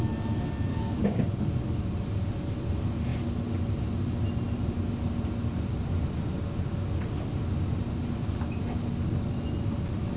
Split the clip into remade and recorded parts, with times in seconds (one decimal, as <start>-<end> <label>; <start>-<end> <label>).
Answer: 0.0-0.7 recorded; 0.7-1.2 remade; 1.2-10.2 recorded